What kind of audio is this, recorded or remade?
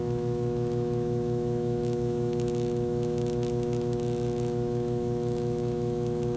remade